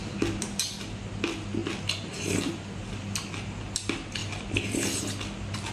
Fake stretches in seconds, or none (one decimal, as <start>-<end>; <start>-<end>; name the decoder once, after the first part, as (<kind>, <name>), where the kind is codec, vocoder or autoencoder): none